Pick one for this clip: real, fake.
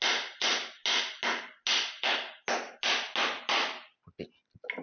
real